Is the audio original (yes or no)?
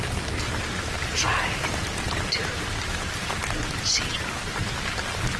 yes